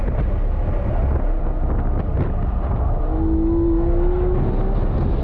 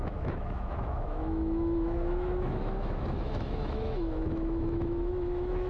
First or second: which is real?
first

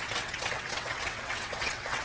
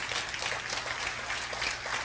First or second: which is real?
second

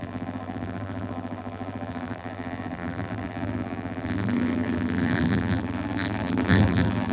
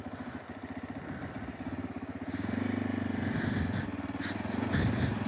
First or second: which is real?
second